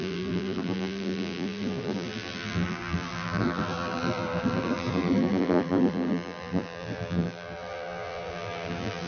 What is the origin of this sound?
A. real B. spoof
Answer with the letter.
B